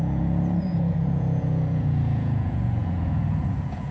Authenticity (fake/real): fake